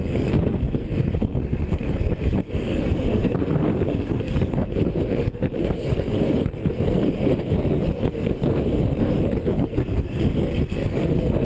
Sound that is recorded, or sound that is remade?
remade